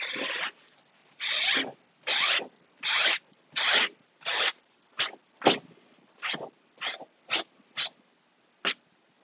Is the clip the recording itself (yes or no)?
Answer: yes